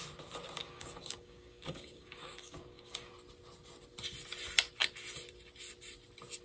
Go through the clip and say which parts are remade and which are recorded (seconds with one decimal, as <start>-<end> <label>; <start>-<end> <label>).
0.0-0.6 recorded; 0.6-3.1 remade; 3.1-6.4 recorded